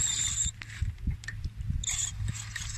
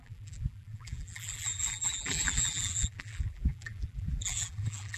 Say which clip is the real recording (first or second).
first